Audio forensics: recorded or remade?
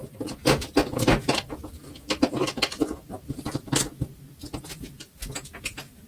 recorded